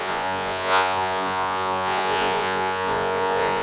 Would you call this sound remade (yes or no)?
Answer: yes